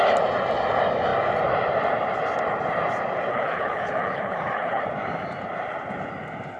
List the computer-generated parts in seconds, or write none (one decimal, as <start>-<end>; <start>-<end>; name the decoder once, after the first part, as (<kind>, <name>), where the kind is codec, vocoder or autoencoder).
3.3-4.8 (codec, HILCodec)